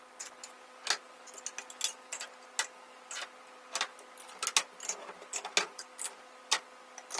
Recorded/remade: recorded